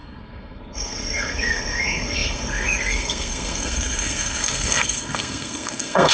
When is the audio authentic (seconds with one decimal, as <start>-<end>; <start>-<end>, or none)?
none